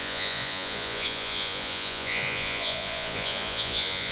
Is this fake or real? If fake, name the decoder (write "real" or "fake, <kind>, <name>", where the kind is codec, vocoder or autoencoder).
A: fake, vocoder, Vocos